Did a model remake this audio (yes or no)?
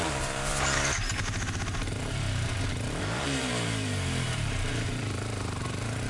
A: yes